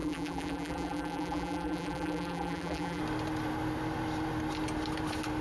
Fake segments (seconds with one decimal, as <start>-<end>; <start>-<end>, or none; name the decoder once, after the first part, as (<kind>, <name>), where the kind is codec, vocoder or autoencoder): 0.0-3.0 (vocoder, BigVGAN v2)